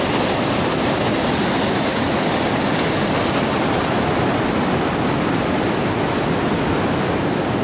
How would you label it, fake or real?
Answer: real